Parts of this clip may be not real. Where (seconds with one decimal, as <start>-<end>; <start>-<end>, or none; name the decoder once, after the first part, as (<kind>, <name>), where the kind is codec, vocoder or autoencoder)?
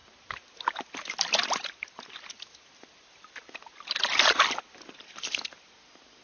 none